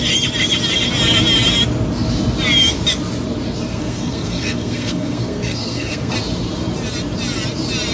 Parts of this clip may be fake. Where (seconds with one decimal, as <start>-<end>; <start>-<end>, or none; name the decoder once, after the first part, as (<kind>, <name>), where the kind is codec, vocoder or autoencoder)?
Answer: 3.7-6.1 (codec, SNAC)